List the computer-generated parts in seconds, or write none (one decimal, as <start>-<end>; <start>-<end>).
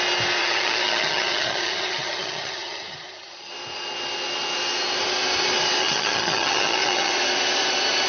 0.4-3.5; 5.8-7.1